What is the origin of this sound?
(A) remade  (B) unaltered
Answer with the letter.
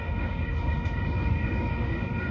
A